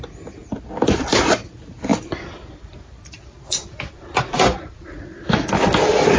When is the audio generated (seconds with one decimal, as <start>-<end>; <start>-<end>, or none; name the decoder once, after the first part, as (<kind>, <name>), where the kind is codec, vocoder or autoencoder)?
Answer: 0.4-1.5 (vocoder, BigVGAN v2); 1.9-5.6